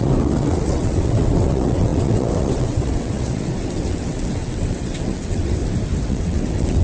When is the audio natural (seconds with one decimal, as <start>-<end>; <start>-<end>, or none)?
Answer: 5.6-6.1